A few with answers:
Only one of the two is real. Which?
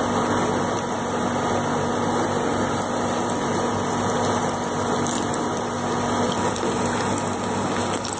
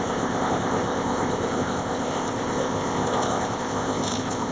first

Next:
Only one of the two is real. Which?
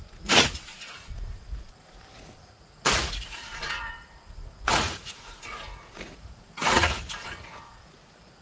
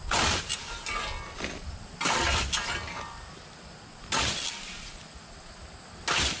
second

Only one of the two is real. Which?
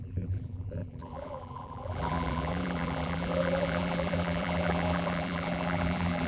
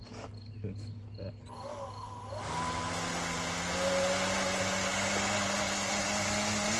second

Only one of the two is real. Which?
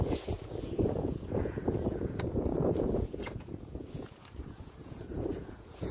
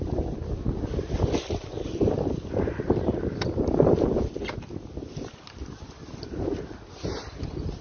second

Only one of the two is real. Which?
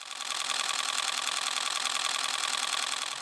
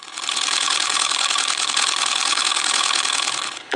first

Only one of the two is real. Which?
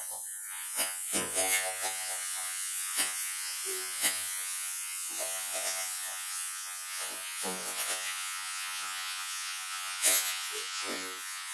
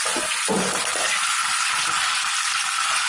second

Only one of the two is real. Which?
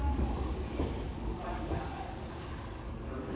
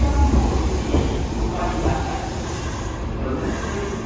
second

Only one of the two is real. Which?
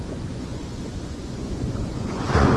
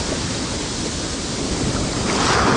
second